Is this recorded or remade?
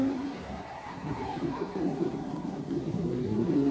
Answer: remade